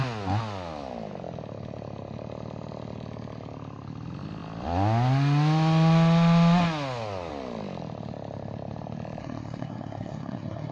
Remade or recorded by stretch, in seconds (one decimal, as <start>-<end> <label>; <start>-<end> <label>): 0.0-9.2 recorded; 9.2-10.7 remade